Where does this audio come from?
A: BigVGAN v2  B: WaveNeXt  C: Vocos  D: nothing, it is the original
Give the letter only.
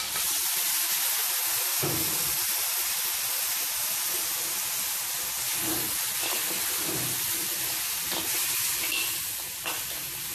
D